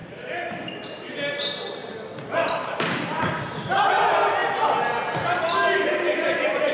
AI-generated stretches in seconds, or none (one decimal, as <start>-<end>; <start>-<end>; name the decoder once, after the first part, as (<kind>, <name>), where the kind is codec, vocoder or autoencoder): 0.0-1.1 (vocoder, BigVGAN v2); 1.8-3.4